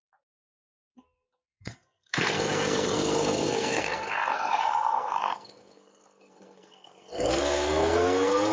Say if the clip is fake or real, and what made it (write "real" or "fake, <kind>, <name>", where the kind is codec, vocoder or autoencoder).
fake, codec, SNAC